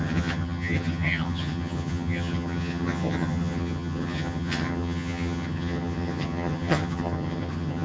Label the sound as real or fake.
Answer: fake